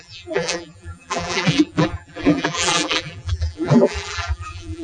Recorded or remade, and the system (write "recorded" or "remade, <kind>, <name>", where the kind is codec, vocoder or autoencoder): remade, vocoder, BigVGAN v2